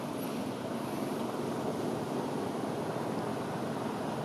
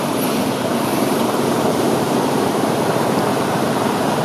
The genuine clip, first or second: first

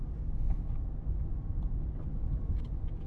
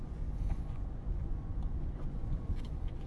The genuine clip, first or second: first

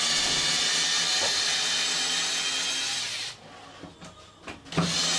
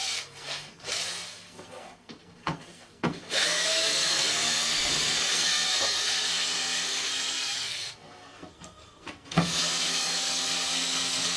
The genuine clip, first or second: first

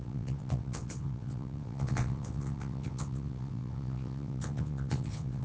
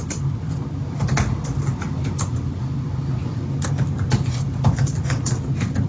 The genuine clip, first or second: second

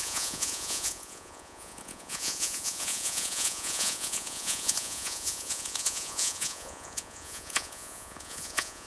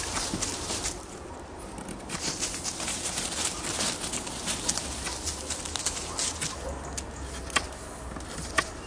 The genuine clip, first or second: second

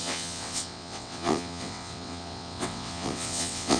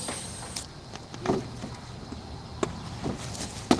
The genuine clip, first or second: second